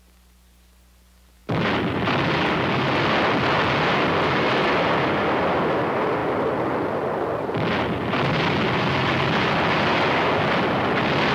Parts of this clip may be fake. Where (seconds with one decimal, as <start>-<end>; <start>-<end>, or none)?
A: none